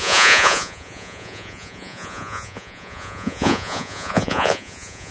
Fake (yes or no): yes